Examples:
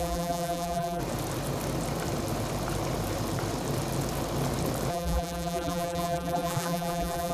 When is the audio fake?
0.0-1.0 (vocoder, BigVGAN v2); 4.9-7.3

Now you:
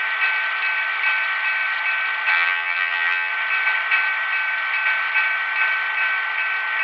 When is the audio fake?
2.3-3.3 (vocoder, HiFi-GAN)

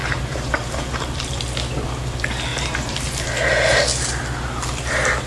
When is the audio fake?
0.0-1.4 (vocoder, BigVGAN v2); 2.5-3.3

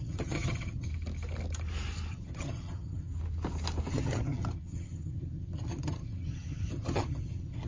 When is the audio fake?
0.0-0.9 (vocoder, HiFi-GAN); 2.1-3.1; 3.9-7.7

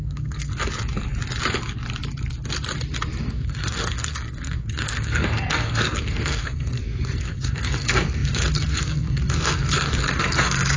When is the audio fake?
0.0-0.5 (codec, SNAC); 3.2-10.8